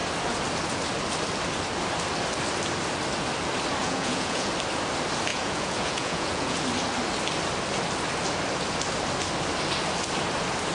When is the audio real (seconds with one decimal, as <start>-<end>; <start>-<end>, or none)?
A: 0.0-3.8; 4.5-5.3; 6.6-10.7